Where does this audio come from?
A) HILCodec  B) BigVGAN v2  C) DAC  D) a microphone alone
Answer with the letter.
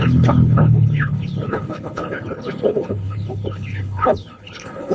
A